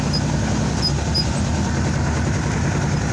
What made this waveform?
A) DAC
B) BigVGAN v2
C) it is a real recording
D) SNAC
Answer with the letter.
C